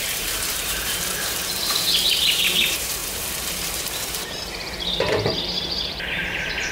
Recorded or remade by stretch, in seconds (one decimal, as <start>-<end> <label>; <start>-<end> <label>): 0.0-6.7 remade